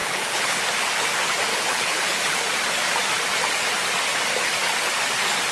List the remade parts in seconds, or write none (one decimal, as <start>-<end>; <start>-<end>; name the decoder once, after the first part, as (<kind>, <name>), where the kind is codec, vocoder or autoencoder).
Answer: 0.0-0.6 (codec, HILCodec); 1.5-2.4